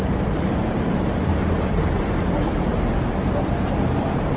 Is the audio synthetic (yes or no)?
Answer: yes